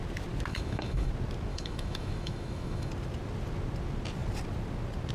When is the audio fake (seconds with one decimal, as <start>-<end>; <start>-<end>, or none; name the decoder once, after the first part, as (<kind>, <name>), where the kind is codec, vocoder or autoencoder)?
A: 0.5-1.1 (autoencoder, DAC-VAE); 1.5-2.9